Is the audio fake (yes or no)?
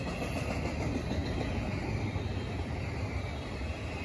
no